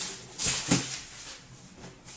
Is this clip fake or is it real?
real